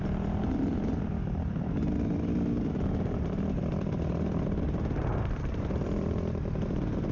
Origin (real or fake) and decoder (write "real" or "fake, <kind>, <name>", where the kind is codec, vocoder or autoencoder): fake, vocoder, BigVGAN v2